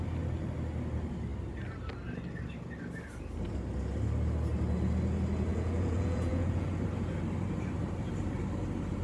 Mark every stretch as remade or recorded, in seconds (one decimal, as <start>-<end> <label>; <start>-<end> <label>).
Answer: 0.0-5.5 recorded; 5.5-6.7 remade; 6.7-9.0 recorded